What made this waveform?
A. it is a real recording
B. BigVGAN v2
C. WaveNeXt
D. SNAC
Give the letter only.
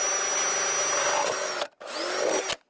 A